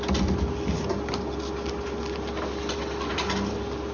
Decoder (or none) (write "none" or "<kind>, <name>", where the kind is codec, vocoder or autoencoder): none